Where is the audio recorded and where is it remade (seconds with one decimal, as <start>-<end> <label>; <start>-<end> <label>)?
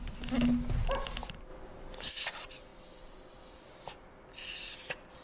0.0-5.2 recorded